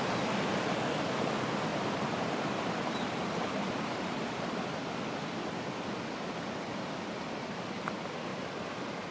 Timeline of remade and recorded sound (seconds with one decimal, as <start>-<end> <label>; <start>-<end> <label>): 0.0-1.7 recorded; 1.7-4.3 remade; 4.3-8.3 recorded; 8.3-9.1 remade